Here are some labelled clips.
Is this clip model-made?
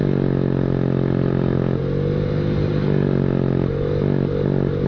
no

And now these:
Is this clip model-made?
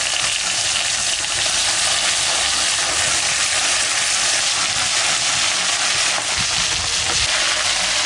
no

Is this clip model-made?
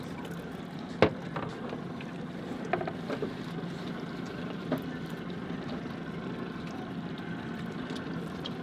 no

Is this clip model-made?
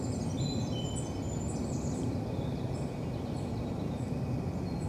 no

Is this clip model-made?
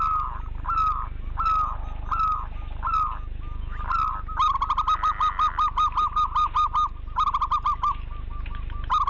no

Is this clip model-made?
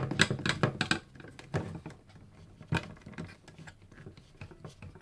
no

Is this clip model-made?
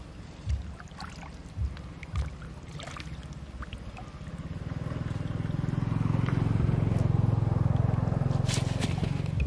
no